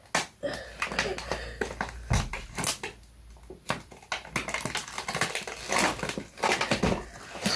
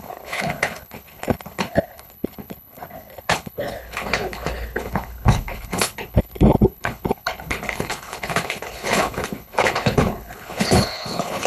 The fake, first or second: second